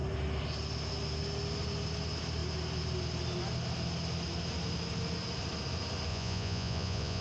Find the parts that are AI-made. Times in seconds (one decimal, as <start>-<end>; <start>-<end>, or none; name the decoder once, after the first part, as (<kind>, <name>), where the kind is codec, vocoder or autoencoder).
6.1-7.2 (vocoder, Vocos)

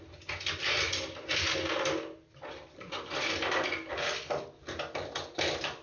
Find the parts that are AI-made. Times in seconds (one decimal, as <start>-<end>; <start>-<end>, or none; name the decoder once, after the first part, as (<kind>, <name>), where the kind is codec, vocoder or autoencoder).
none

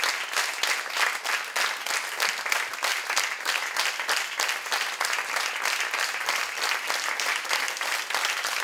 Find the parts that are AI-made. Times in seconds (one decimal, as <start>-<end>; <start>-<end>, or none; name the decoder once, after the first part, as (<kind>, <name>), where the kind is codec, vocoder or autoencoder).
none